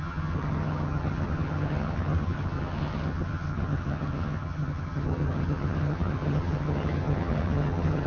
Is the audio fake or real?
fake